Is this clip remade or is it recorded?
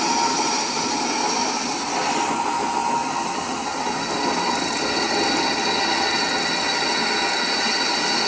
recorded